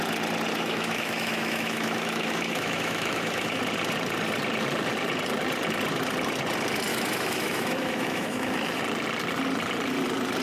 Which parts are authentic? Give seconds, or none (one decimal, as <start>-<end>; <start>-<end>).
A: 0.0-0.5; 3.6-6.9; 8.8-10.4